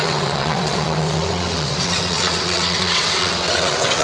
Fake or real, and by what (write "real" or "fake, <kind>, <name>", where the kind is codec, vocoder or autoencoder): fake, vocoder, WaveNeXt